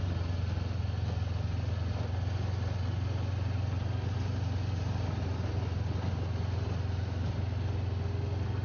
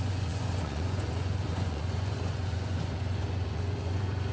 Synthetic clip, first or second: second